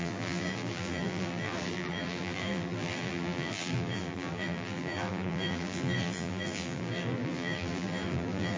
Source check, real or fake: fake